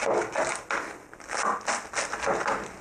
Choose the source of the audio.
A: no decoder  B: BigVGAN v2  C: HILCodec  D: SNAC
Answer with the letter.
A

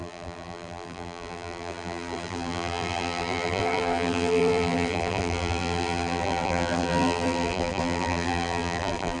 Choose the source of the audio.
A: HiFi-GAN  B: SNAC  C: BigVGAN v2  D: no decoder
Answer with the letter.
C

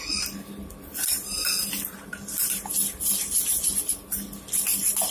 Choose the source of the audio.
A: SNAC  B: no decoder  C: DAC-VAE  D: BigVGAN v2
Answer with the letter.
D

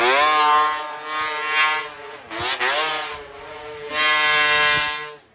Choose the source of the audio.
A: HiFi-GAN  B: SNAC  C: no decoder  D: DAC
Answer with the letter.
C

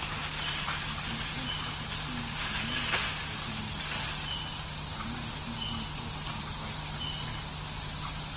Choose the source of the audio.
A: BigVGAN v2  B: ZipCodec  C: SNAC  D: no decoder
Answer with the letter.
D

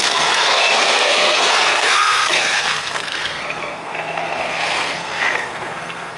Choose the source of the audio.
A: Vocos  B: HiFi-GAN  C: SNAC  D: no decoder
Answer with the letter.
C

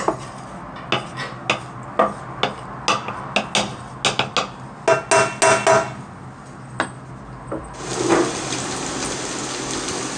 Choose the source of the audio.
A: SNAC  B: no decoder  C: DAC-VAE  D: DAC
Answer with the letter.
B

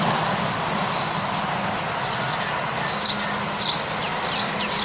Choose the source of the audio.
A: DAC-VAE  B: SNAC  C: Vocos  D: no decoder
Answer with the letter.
D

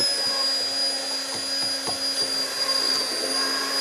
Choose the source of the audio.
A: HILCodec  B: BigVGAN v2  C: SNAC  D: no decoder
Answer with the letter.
D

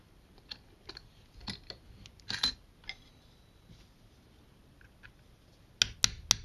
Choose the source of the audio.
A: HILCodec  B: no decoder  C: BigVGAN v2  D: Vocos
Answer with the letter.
B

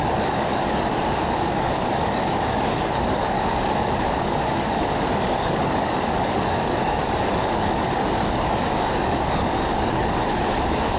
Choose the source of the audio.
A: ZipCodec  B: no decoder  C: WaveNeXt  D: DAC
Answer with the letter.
D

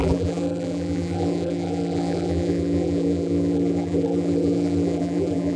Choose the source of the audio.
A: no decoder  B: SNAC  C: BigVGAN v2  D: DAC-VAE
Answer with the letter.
C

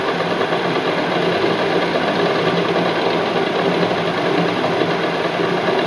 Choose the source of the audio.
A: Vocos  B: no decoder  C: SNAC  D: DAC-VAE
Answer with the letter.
B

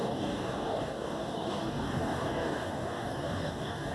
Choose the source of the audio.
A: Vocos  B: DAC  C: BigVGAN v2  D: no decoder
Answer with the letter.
B